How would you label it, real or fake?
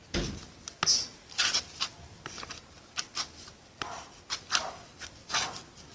real